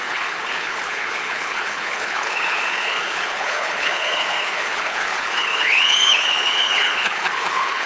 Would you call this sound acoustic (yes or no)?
no